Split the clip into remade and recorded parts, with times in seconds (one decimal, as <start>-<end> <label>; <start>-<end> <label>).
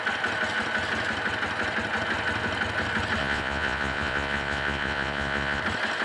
0.0-3.2 recorded; 3.2-5.6 remade; 5.6-6.0 recorded